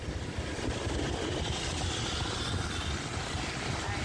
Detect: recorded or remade recorded